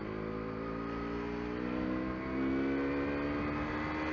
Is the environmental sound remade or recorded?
recorded